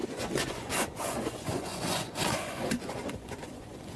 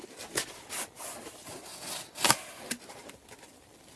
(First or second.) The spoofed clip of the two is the first